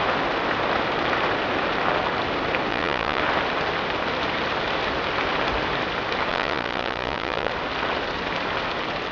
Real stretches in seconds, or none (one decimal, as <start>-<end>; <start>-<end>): 0.0-2.7; 3.2-6.3; 7.5-9.1